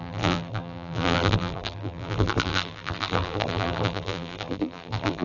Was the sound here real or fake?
fake